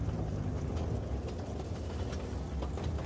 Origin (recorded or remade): recorded